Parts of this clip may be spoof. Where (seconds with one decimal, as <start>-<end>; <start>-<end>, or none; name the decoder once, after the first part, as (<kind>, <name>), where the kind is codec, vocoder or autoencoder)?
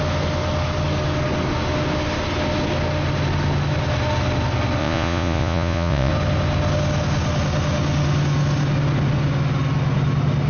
4.8-6.1 (vocoder, Vocos)